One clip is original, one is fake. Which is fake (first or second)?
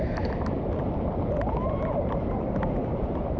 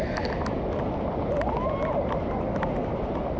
first